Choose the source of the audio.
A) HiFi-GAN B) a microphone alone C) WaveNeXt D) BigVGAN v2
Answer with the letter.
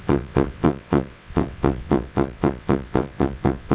C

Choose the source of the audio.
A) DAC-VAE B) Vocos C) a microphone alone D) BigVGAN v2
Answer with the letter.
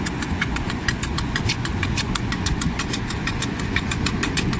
B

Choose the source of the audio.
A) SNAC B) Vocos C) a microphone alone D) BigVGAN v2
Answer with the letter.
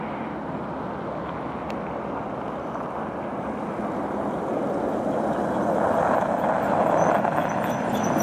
C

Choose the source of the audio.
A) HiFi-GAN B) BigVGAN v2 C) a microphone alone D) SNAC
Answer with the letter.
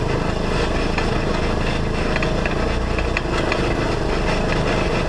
C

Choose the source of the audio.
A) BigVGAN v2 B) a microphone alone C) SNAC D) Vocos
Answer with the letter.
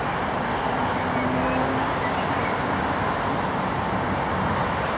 B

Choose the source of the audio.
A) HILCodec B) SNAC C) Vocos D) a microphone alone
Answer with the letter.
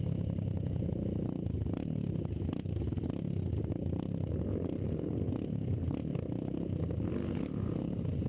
D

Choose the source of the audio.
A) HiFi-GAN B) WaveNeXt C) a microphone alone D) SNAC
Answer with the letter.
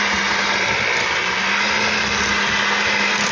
C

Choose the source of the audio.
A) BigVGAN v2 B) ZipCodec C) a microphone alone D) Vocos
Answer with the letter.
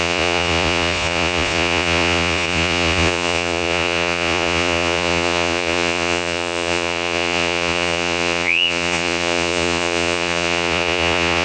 D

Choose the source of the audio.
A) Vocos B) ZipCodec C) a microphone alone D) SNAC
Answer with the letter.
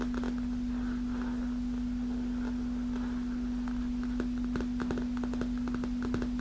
C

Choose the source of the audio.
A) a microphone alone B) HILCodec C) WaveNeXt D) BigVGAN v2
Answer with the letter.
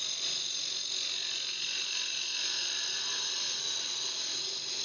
A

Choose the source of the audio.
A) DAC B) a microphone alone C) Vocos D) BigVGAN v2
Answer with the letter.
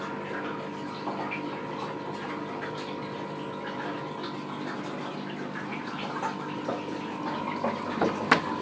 B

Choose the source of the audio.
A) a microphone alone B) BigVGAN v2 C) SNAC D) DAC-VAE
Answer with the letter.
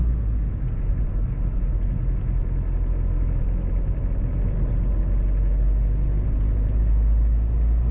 A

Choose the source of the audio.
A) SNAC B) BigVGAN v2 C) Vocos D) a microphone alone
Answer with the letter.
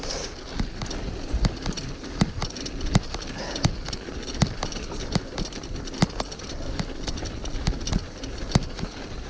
D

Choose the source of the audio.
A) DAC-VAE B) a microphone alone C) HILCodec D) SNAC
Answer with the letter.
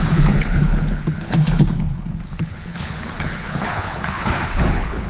C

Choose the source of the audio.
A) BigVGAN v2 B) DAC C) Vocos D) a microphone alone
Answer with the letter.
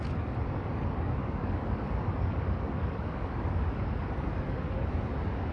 B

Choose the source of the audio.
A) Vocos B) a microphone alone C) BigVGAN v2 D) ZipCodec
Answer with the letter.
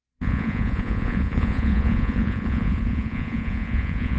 A